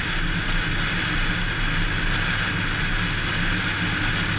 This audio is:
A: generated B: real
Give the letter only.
B